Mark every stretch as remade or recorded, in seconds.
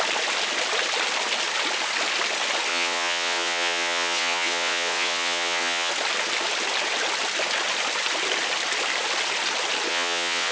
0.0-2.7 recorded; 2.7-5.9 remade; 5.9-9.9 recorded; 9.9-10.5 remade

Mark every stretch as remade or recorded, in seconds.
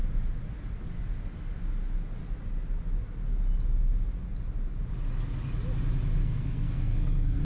0.0-6.2 recorded; 6.2-7.4 remade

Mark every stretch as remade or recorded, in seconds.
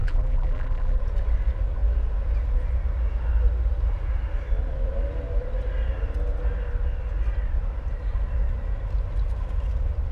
0.0-1.0 remade; 1.0-10.1 recorded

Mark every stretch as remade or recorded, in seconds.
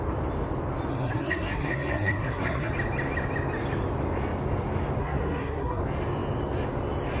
0.0-0.9 recorded; 0.9-2.7 remade; 2.7-5.0 recorded; 5.0-5.8 remade; 5.8-7.2 recorded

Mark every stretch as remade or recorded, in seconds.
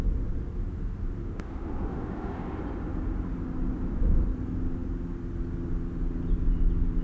0.0-1.2 recorded; 1.2-2.6 remade; 2.6-7.0 recorded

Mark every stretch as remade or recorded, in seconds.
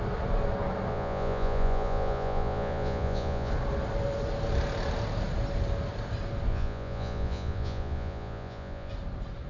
0.0-0.9 recorded; 0.9-3.5 remade; 3.5-6.5 recorded; 6.5-8.9 remade; 8.9-9.5 recorded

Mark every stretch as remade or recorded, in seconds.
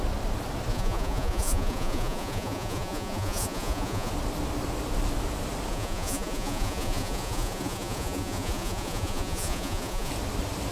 0.0-0.7 recorded; 0.7-4.1 remade; 4.1-5.7 recorded; 5.7-10.1 remade; 10.1-10.7 recorded